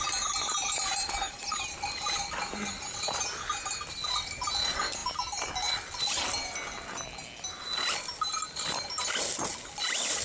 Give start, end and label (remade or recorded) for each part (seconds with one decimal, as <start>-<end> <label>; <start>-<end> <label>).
0.0-10.2 recorded